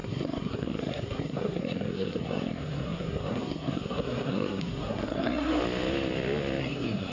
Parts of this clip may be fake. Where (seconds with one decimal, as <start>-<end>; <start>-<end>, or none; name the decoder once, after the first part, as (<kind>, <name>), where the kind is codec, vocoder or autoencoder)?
0.0-5.6 (codec, SNAC); 6.6-7.1